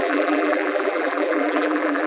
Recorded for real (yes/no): no